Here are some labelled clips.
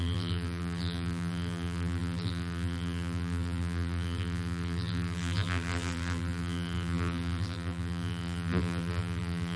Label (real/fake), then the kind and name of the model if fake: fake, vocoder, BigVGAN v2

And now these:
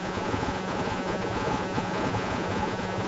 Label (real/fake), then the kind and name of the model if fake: fake, vocoder, Vocos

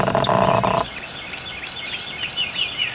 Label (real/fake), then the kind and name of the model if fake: real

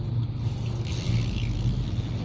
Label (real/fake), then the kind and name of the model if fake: real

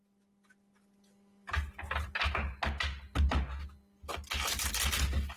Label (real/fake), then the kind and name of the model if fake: real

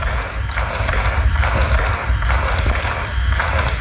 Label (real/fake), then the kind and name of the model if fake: real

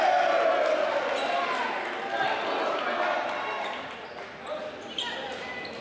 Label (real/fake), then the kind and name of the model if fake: real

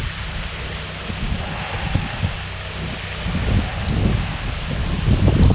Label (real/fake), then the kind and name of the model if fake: real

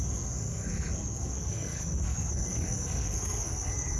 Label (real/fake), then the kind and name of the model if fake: fake, codec, SNAC